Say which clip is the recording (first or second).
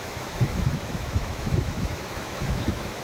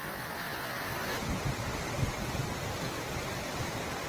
second